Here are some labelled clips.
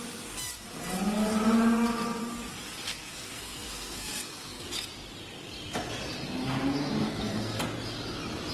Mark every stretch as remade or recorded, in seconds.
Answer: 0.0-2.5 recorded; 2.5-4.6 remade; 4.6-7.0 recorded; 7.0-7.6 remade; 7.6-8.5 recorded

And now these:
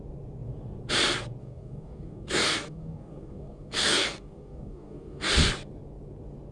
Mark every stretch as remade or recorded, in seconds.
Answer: 0.0-1.4 recorded; 1.4-5.3 remade; 5.3-6.5 recorded

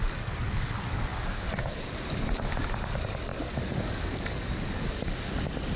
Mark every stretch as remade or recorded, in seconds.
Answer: 0.0-1.1 remade; 1.1-2.7 recorded; 2.7-5.8 remade

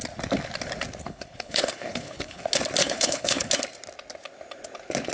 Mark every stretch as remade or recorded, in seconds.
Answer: 0.0-1.0 recorded; 1.0-2.4 remade; 2.4-2.8 recorded; 2.8-3.5 remade; 3.5-5.1 recorded

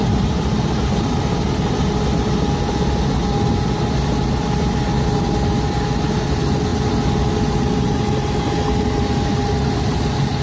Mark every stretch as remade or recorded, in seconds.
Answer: 0.0-10.4 recorded

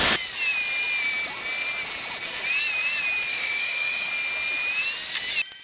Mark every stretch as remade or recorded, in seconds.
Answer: 0.0-3.3 recorded; 3.3-4.1 remade; 4.1-5.6 recorded

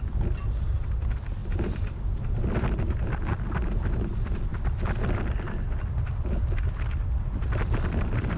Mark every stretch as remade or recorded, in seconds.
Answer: 0.0-8.4 recorded